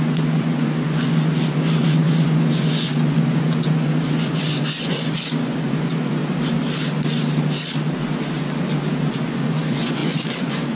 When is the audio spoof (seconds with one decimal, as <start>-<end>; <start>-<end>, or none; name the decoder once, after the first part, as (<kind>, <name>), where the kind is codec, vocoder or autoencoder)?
0.0-6.2 (vocoder, Vocos); 9.1-10.8